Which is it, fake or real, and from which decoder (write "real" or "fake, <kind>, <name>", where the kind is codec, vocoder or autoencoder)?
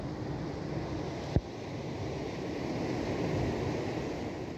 real